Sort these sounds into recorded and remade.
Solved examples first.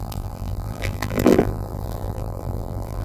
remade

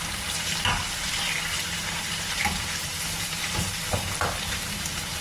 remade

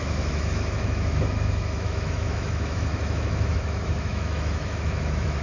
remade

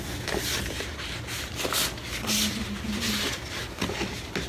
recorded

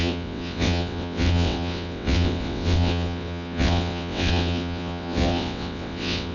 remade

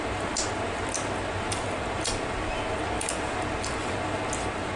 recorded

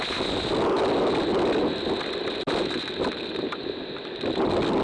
recorded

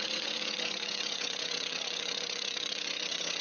remade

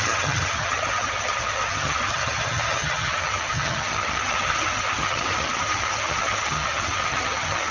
remade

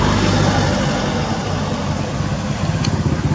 recorded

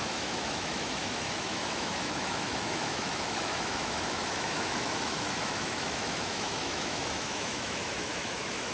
remade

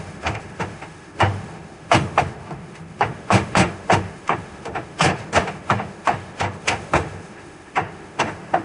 remade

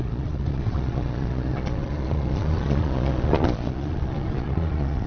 remade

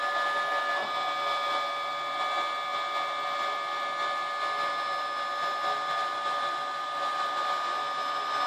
recorded